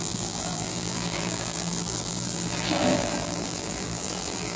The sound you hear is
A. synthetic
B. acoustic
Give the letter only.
A